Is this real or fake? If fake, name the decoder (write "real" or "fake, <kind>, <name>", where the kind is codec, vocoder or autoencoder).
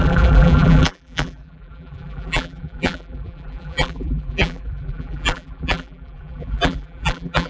fake, vocoder, BigVGAN v2